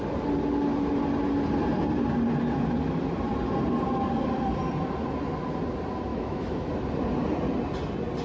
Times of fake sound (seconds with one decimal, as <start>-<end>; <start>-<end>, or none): 6.1-6.7

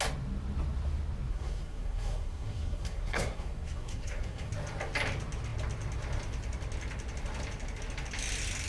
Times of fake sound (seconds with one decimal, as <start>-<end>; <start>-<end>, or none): 1.3-4.5

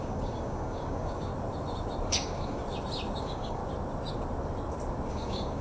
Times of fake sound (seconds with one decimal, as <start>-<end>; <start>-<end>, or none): 0.0-1.3; 2.1-2.6; 3.2-3.6; 5.1-5.6